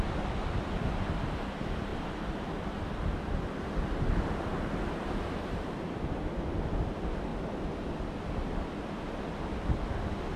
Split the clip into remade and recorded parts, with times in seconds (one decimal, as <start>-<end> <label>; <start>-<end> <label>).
0.0-1.9 recorded; 1.9-2.5 remade; 2.5-4.5 recorded; 4.5-6.3 remade; 6.3-10.4 recorded